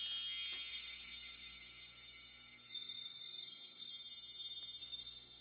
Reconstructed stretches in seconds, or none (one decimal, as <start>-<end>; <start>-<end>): 0.7-3.9; 4.8-5.4

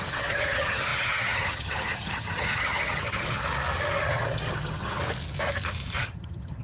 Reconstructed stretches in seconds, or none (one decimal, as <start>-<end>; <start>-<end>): 0.0-3.4; 4.0-5.0; 6.0-6.6

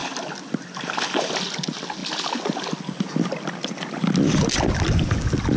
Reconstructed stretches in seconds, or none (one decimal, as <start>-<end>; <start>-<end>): none

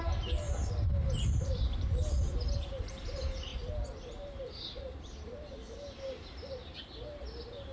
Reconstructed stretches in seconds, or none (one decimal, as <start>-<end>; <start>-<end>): 0.0-6.6; 7.2-7.7

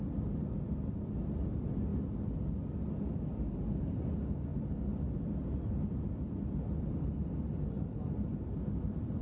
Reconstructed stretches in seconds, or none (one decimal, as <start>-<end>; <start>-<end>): none